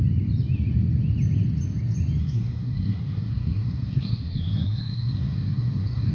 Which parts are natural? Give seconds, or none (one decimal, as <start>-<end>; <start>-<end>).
0.0-2.2